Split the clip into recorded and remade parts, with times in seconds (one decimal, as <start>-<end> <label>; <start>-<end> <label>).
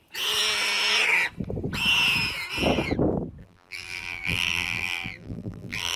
0.0-3.4 recorded; 3.4-6.0 remade